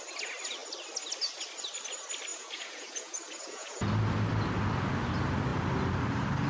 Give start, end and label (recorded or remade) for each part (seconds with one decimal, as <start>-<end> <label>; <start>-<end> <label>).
0.0-2.3 recorded; 2.3-3.9 remade; 3.9-6.5 recorded